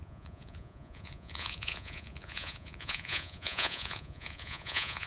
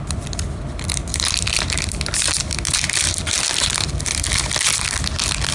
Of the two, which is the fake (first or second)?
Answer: first